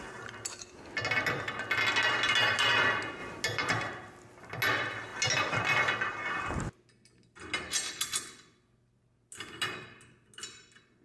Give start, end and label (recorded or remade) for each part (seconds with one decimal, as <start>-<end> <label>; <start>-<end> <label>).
0.0-11.0 recorded